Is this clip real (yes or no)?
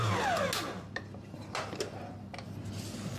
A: yes